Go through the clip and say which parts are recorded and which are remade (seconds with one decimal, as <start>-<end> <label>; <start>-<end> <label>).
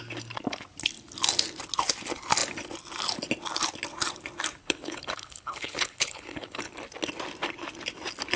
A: 0.0-4.6 recorded; 4.6-6.6 remade; 6.6-8.4 recorded